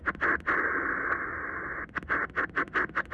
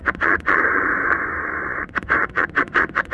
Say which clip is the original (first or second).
first